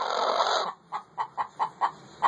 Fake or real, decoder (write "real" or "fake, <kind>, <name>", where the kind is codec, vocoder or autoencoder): real